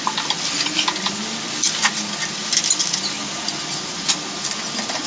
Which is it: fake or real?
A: real